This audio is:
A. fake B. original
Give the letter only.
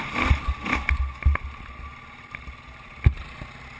B